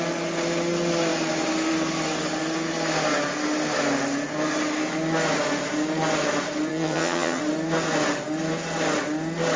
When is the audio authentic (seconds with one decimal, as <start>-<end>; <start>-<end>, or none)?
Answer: 0.0-6.7; 7.4-9.6